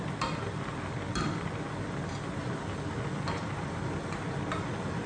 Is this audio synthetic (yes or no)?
no